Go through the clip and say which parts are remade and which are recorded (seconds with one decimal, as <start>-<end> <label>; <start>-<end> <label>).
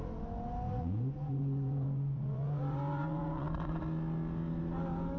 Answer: 0.0-0.8 recorded; 0.8-3.8 remade; 3.8-5.2 recorded